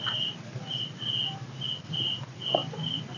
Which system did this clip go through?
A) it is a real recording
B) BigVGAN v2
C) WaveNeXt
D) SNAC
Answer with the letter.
A